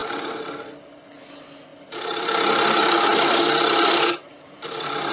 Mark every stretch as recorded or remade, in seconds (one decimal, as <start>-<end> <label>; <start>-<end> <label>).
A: 0.0-1.1 recorded; 1.1-5.1 remade

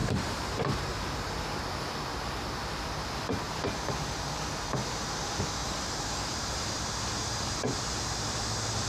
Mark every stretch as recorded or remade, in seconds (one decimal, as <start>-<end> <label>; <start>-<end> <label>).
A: 0.0-1.0 remade; 1.0-5.6 recorded; 5.6-8.4 remade; 8.4-8.9 recorded

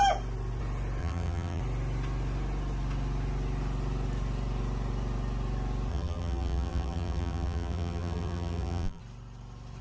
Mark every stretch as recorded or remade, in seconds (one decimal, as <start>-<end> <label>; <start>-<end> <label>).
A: 0.0-1.0 recorded; 1.0-1.6 remade; 1.6-5.9 recorded; 5.9-9.0 remade; 9.0-9.8 recorded

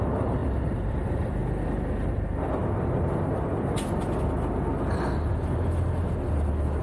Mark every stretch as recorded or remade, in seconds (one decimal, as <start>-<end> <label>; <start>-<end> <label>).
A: 0.0-1.4 remade; 1.4-2.1 recorded; 2.1-2.6 remade; 2.6-6.8 recorded

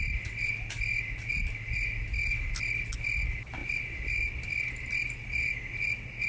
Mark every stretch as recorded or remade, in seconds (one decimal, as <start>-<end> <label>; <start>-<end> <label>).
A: 0.0-3.6 recorded; 3.6-4.3 remade; 4.3-6.3 recorded

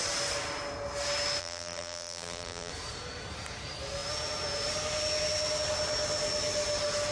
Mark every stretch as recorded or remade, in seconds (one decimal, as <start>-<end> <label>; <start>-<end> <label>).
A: 0.0-1.4 recorded; 1.4-2.7 remade; 2.7-7.1 recorded

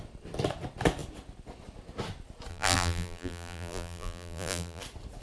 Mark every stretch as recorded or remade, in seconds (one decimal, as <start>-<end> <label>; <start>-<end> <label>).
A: 0.0-2.5 recorded; 2.5-4.8 remade; 4.8-5.2 recorded

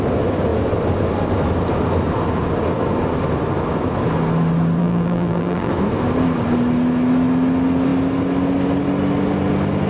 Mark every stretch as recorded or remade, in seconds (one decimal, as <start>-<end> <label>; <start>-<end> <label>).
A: 0.0-4.8 recorded; 4.8-5.7 remade; 5.7-9.9 recorded